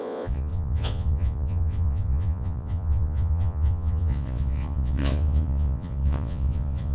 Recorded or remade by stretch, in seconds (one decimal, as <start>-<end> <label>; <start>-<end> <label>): 0.0-6.9 remade